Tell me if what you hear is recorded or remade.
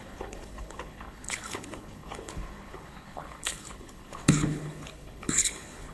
remade